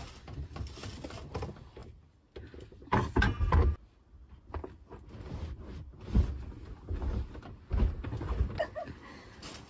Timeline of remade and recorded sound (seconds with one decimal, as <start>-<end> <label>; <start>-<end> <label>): 0.0-9.7 recorded